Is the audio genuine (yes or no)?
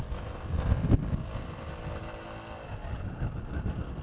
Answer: yes